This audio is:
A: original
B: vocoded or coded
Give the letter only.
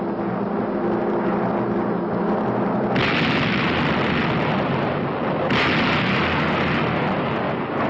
A